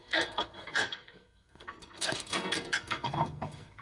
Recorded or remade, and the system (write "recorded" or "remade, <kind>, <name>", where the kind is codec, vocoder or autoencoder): remade, codec, SNAC